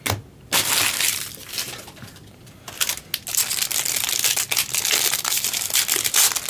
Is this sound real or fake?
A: real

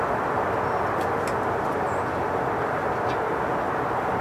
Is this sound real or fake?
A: real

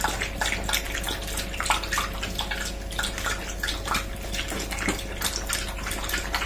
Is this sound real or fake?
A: real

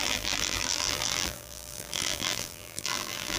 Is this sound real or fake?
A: fake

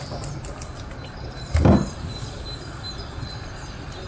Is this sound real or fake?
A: real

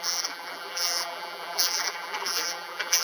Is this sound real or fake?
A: fake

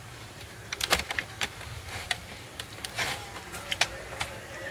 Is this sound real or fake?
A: fake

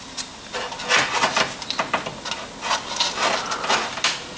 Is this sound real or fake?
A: real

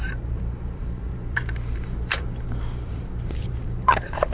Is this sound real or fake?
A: fake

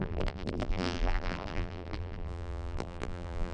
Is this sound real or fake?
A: fake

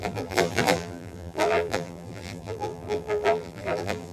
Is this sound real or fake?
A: fake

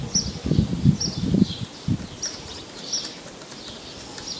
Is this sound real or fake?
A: real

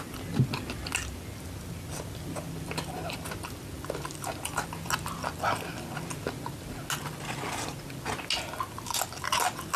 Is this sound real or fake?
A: real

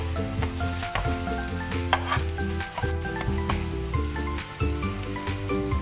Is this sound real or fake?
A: real